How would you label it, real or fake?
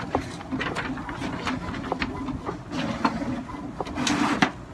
real